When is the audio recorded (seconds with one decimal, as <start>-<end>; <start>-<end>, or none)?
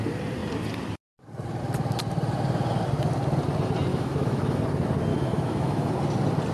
0.0-3.9; 4.6-5.1; 5.9-6.5